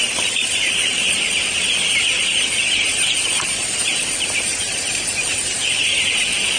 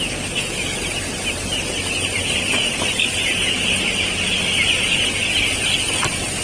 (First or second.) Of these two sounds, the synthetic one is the first